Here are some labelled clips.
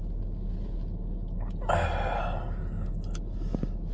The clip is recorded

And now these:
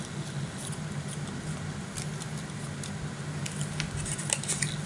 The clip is recorded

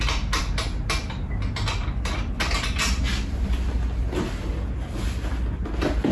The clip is recorded